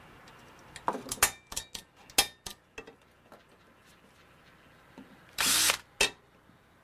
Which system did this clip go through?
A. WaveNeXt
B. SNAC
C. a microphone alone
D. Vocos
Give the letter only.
C